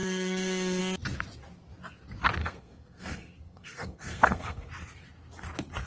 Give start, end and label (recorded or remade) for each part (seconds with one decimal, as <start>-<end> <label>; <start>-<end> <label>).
0.0-0.8 remade; 0.8-2.4 recorded; 2.4-4.7 remade; 4.7-5.9 recorded